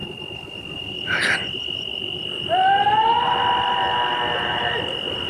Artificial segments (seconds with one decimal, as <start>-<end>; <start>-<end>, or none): none